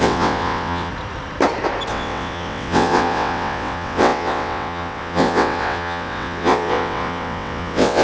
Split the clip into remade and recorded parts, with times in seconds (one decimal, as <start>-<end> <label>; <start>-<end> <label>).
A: 0.0-0.9 remade; 0.9-1.9 recorded; 1.9-8.0 remade